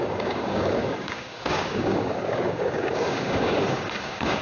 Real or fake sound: fake